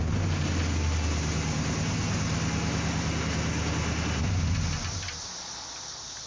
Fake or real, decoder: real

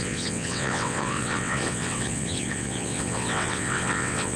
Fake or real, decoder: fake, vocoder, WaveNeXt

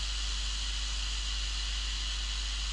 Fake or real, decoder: real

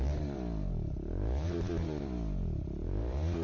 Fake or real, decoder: fake, vocoder, BigVGAN v2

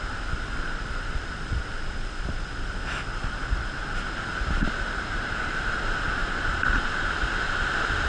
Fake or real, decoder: real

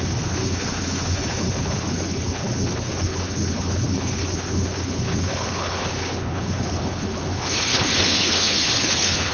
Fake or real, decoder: fake, codec, HILCodec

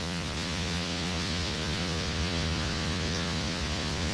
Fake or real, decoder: fake, vocoder, Vocos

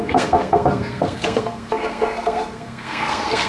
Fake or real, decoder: fake, codec, SNAC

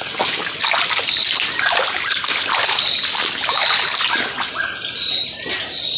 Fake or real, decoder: real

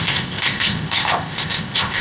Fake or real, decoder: fake, codec, ZipCodec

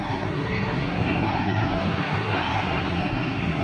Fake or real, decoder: fake, codec, SNAC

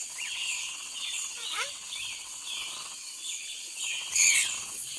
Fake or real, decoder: fake, vocoder, WaveNeXt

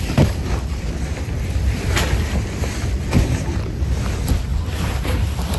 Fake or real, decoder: fake, vocoder, BigVGAN v2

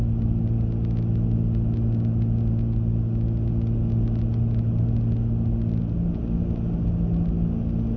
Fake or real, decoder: real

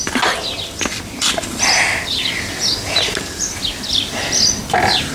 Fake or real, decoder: real